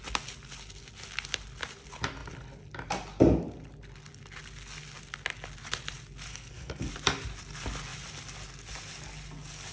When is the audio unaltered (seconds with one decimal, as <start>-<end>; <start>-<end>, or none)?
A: 0.0-6.3; 6.9-9.7